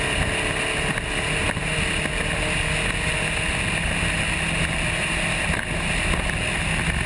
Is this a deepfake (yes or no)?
no